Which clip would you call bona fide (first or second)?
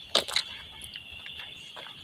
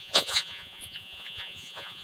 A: first